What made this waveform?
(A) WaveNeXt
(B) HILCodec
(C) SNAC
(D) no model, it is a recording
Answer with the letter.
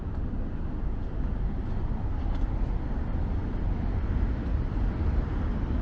D